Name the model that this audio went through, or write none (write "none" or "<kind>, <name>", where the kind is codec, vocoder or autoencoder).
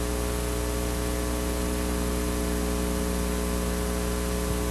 none